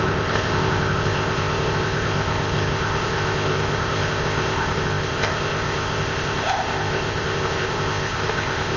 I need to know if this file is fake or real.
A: fake